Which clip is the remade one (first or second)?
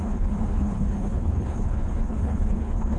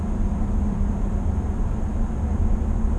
first